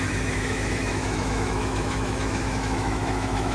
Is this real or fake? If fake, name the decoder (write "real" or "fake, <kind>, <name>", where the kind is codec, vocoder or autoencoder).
fake, autoencoder, DAC-VAE